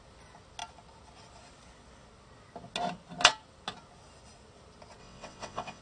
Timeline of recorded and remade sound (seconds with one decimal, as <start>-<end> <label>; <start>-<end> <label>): 0.0-5.0 recorded; 5.0-5.8 remade